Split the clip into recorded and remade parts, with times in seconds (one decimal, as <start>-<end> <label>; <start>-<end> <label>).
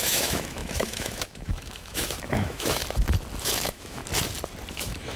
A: 0.0-2.8 remade; 2.8-3.4 recorded; 3.4-4.0 remade; 4.0-4.7 recorded; 4.7-5.2 remade